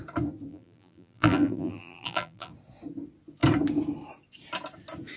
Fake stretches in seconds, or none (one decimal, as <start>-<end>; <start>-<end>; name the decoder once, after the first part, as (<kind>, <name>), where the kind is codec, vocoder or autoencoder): 0.5-2.5 (vocoder, BigVGAN v2)